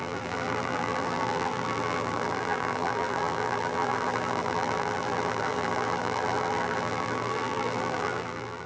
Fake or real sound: fake